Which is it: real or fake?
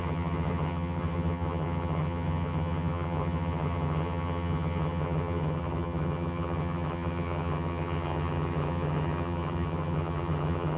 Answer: fake